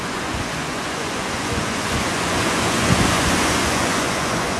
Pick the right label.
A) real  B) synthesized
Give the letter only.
B